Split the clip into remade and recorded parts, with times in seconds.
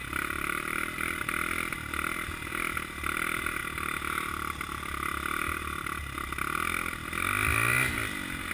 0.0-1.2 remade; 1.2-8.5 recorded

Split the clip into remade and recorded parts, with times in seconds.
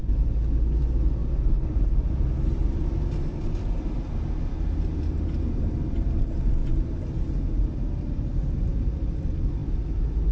0.0-10.3 recorded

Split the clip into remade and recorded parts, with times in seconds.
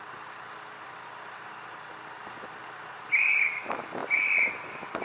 0.0-5.0 remade